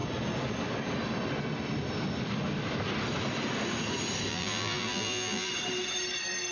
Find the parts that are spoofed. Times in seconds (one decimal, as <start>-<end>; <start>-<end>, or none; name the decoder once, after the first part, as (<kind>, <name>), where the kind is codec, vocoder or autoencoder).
4.3-5.5 (vocoder, BigVGAN v2)